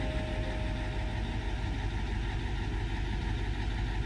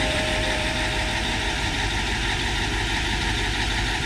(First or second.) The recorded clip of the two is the first